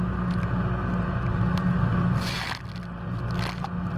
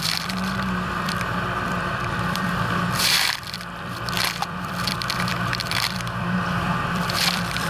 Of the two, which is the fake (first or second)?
second